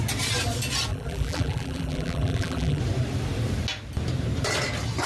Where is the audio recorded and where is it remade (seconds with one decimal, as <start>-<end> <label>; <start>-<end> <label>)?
0.0-0.9 recorded; 0.9-2.8 remade; 2.8-5.1 recorded